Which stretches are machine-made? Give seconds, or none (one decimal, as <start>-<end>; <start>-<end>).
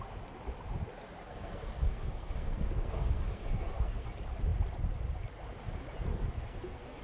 1.2-4.1; 6.1-7.0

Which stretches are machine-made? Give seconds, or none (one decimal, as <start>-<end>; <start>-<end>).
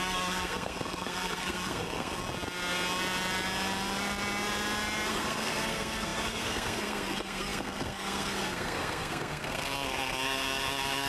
0.0-2.2; 5.1-11.1